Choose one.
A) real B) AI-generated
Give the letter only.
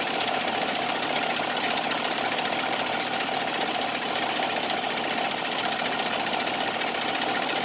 B